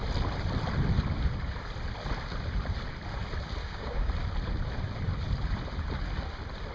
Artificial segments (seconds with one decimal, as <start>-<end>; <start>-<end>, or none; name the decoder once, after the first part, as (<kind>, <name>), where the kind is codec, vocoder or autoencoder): 3.6-4.1 (codec, DAC)